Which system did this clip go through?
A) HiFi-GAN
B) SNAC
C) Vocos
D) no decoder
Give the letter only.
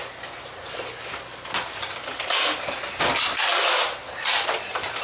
D